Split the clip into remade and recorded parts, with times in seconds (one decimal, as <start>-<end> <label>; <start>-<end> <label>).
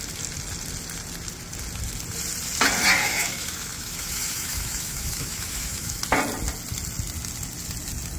0.0-3.0 recorded; 3.0-6.0 remade; 6.0-8.2 recorded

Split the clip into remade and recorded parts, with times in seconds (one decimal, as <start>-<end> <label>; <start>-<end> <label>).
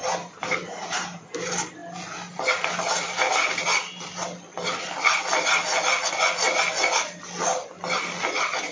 0.0-1.2 remade; 1.2-8.7 recorded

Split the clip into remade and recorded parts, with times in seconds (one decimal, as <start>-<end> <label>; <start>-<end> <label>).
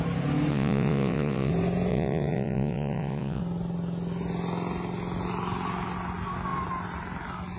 0.0-0.5 recorded; 0.5-1.5 remade; 1.5-1.9 recorded; 1.9-3.4 remade; 3.4-7.6 recorded